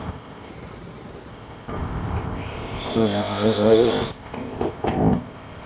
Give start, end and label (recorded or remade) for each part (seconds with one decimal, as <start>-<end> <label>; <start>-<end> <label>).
0.0-0.5 remade; 0.5-1.3 recorded; 1.3-5.7 remade